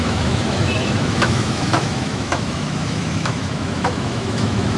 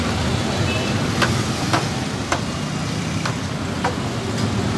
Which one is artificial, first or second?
first